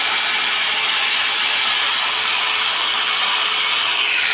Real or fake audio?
real